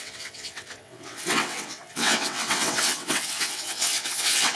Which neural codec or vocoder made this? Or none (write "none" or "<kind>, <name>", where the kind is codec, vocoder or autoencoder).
vocoder, WaveNeXt